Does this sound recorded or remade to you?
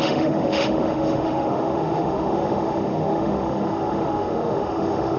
remade